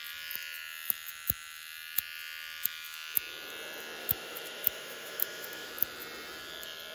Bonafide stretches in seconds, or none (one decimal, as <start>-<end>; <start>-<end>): 0.0-4.0; 5.7-6.9